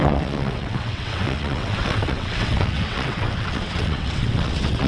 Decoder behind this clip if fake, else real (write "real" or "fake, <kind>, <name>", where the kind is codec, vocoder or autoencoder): fake, vocoder, WaveNeXt